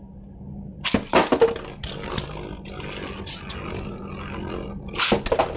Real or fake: real